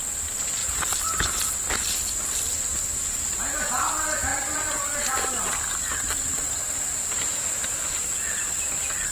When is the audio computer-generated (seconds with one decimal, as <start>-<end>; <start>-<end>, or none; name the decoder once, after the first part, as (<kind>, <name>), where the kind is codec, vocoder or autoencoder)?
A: 0.6-1.3 (vocoder, BigVGAN v2); 4.3-5.3; 5.8-8.6